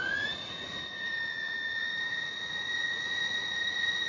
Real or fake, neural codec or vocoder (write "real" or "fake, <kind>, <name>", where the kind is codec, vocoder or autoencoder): fake, vocoder, Vocos